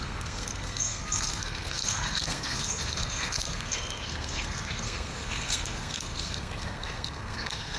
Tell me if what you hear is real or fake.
fake